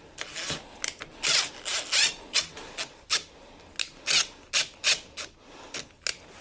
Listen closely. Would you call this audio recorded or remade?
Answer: recorded